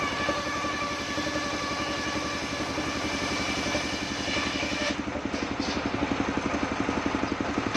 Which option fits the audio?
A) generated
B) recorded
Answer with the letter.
B